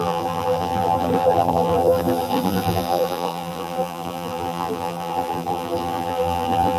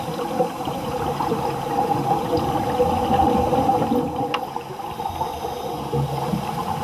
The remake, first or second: first